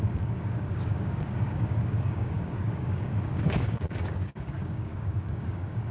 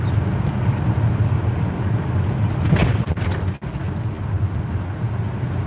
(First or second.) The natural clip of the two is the second